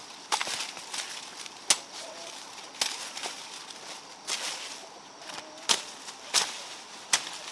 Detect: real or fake real